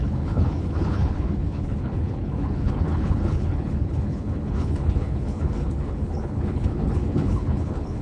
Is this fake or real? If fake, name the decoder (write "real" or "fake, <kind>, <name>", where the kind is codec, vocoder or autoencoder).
fake, codec, HILCodec